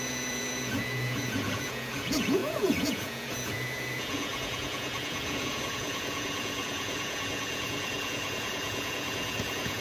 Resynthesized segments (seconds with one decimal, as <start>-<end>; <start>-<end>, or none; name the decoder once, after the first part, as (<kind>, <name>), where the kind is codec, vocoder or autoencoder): 0.0-9.8 (vocoder, Vocos)